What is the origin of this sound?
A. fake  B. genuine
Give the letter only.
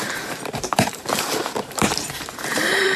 A